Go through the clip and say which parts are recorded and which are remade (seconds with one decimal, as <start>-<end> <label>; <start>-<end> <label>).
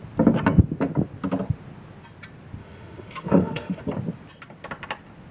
0.0-2.6 recorded; 2.6-3.8 remade; 3.8-5.3 recorded